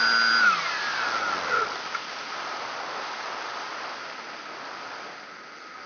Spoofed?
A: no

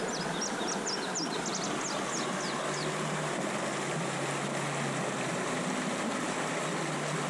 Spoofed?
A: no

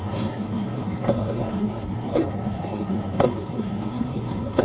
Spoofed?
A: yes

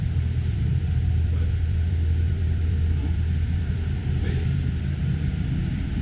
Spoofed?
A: yes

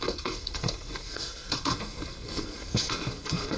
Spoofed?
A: yes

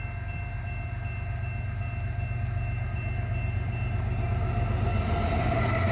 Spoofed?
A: no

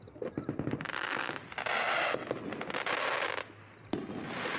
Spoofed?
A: no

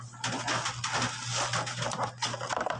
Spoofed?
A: no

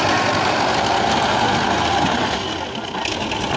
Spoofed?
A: no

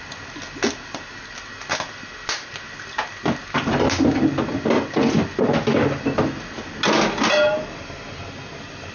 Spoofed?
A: no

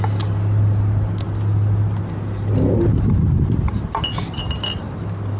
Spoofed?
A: no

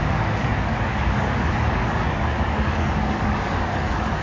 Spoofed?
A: yes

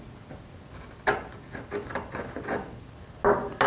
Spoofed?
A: no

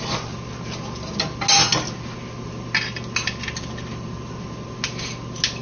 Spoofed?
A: no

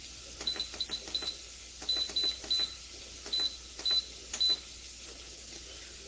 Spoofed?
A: no